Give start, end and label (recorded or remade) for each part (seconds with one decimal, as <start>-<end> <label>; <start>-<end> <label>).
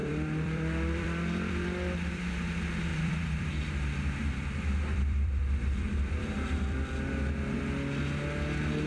0.0-2.3 remade; 2.3-2.9 recorded; 2.9-3.5 remade; 3.5-4.2 recorded; 4.2-6.9 remade; 6.9-8.9 recorded